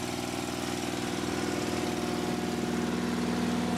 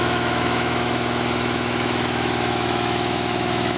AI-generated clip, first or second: second